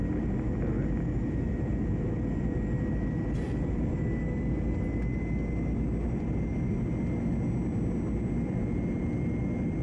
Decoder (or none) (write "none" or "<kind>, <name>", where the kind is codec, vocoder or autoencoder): none